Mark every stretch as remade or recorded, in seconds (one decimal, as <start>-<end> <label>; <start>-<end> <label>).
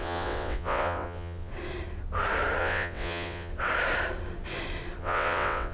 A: 0.0-1.5 remade; 1.5-2.6 recorded; 2.6-3.5 remade; 3.5-5.0 recorded; 5.0-5.7 remade